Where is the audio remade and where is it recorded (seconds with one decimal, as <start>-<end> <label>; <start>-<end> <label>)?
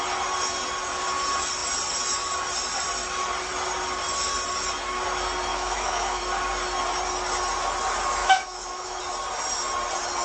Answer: 0.0-5.5 recorded; 5.5-6.2 remade; 6.2-8.2 recorded; 8.2-9.0 remade; 9.0-10.2 recorded